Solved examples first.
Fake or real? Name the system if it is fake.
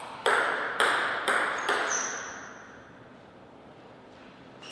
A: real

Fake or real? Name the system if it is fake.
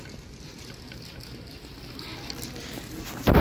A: real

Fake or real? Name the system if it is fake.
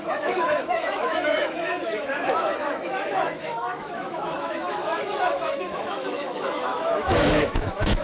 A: fake, autoencoder, DAC-VAE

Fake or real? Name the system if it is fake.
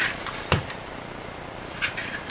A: fake, vocoder, BigVGAN v2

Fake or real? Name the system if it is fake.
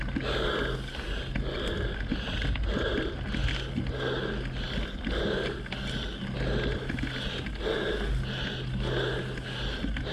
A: real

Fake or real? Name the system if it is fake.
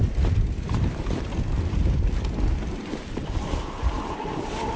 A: real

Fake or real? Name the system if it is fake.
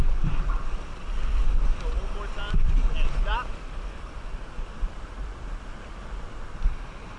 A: real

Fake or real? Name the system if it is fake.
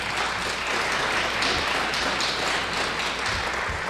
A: real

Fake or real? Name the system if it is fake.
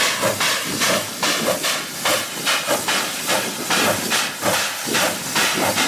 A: real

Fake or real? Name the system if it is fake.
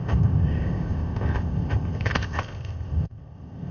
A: fake, codec, ZipCodec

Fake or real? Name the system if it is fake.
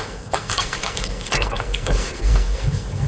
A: fake, codec, SNAC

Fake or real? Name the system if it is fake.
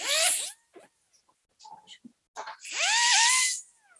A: real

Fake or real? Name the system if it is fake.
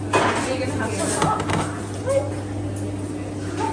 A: real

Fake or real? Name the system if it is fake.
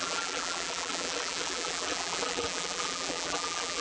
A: fake, vocoder, BigVGAN v2